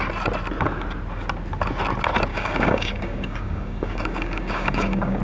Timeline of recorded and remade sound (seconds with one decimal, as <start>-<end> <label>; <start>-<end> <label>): 0.0-2.3 recorded; 2.3-5.2 remade

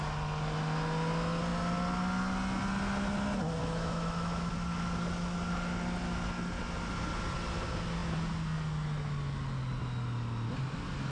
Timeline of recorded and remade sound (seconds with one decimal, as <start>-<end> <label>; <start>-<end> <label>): 0.0-3.6 recorded; 3.6-4.5 remade; 4.5-11.1 recorded

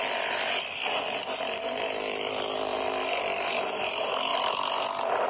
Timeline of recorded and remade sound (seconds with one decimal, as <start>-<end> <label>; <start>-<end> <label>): 0.0-2.7 remade; 2.7-3.8 recorded; 3.8-4.3 remade; 4.3-5.3 recorded

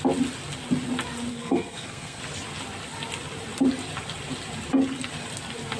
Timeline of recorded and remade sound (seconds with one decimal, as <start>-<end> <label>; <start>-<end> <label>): 0.0-1.3 recorded; 1.3-2.2 remade; 2.2-5.8 recorded

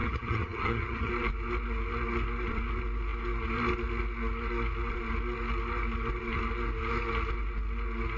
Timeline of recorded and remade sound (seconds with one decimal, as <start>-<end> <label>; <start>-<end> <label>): 0.0-1.1 remade; 1.1-8.2 recorded

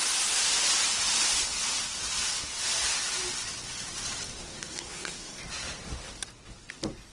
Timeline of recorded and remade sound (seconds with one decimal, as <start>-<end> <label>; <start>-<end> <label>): 0.0-4.4 recorded; 4.4-5.4 remade; 5.4-7.1 recorded